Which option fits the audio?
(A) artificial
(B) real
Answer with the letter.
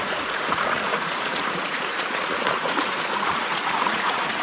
A